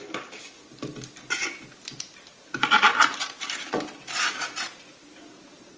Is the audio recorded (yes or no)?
yes